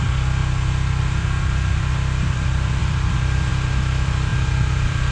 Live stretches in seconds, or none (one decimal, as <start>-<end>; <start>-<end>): 0.0-2.8; 3.5-5.1